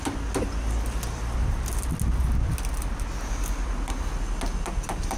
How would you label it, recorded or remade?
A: recorded